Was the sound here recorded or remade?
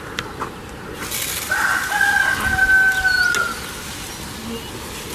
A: recorded